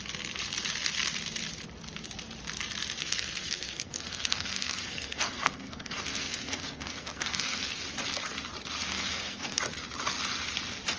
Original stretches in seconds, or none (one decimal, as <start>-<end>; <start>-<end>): 0.0-3.0; 7.8-8.9; 9.6-11.0